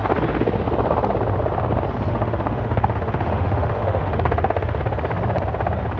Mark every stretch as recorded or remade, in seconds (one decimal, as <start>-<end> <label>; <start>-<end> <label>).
0.0-2.1 recorded; 2.1-4.8 remade; 4.8-6.0 recorded